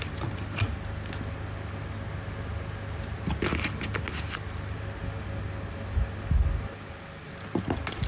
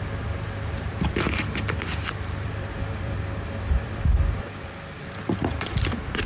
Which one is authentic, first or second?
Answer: first